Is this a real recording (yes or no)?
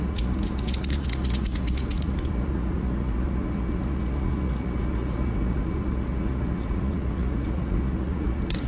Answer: no